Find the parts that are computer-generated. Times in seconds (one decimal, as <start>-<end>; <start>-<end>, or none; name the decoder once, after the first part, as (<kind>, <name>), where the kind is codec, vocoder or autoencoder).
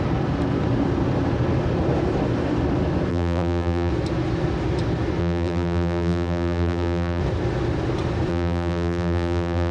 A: 3.1-3.9 (vocoder, BigVGAN v2); 5.2-7.2; 8.3-9.7